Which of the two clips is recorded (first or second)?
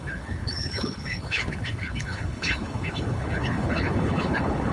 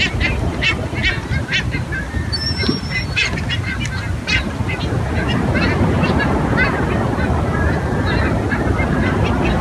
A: second